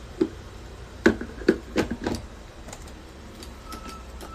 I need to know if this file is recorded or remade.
remade